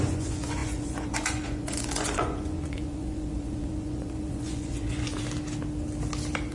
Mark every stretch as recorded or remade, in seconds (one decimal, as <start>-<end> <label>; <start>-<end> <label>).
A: 0.0-5.1 remade; 5.1-6.5 recorded